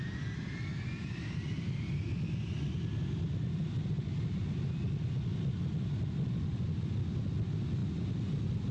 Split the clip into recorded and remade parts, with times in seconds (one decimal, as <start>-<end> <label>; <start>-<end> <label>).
0.0-8.7 recorded